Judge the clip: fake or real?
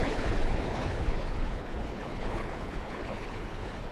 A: fake